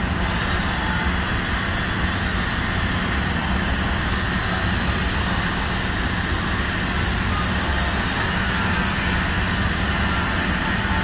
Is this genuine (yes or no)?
yes